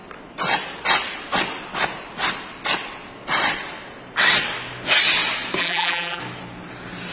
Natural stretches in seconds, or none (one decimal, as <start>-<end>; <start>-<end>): 0.0-5.6; 6.2-7.1